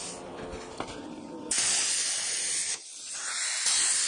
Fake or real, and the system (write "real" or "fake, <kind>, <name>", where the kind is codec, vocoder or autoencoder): real